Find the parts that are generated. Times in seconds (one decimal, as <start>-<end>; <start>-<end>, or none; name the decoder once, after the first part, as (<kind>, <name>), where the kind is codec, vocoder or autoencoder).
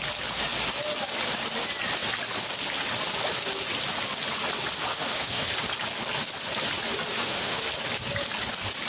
4.9-5.5 (autoencoder, DAC-VAE); 7.1-7.6